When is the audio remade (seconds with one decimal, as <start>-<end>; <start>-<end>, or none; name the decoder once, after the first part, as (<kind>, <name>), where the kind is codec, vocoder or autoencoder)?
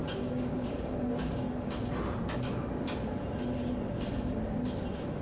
0.0-1.4 (codec, DAC)